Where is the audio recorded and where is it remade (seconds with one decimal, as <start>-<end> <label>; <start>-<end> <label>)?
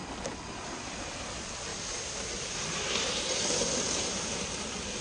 0.0-1.7 recorded; 1.7-4.4 remade; 4.4-5.0 recorded